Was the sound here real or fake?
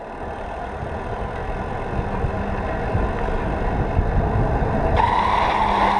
real